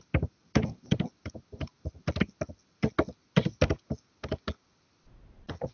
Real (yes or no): yes